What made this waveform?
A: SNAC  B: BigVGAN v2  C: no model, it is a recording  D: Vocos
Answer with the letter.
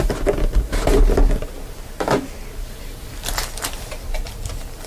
C